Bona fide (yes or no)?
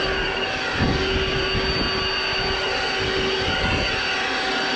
yes